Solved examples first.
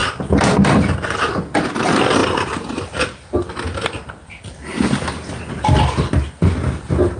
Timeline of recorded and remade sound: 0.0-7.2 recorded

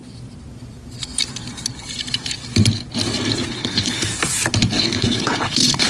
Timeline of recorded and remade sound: 0.0-3.5 recorded; 3.5-4.1 remade; 4.1-4.8 recorded; 4.8-5.9 remade

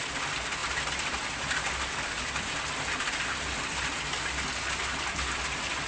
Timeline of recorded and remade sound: 0.0-5.9 recorded

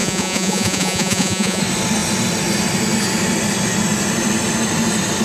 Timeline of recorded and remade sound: 0.0-1.6 remade; 1.6-5.2 recorded

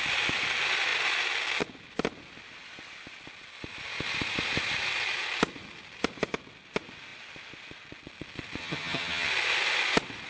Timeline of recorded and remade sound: 0.0-8.6 recorded; 8.6-9.3 remade; 9.3-10.3 recorded